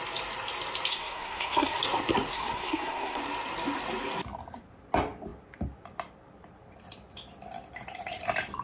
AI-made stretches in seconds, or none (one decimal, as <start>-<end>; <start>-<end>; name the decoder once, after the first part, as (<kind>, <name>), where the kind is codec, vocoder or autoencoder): 0.9-1.8 (codec, SNAC); 2.3-3.2